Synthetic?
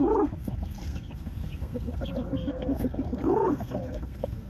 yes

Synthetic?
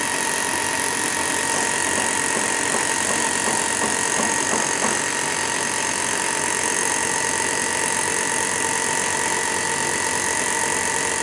no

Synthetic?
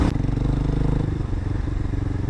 no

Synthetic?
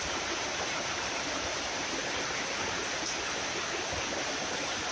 yes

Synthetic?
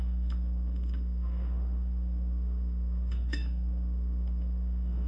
yes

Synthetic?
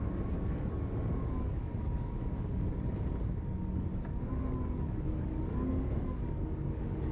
yes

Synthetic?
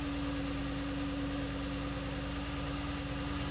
no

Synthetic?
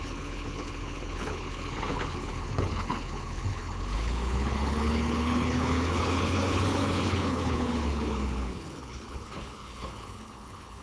yes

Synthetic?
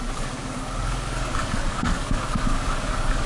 yes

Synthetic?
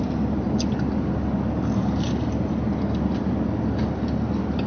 no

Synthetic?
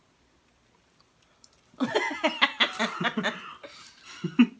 no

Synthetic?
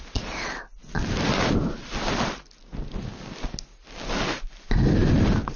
no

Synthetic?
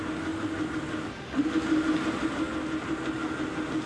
no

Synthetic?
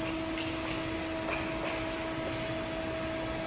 no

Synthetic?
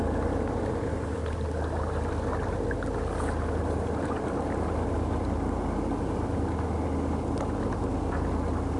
no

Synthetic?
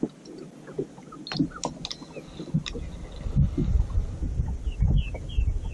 no